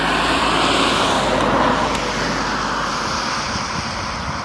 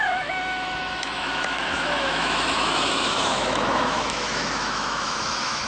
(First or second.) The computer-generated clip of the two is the second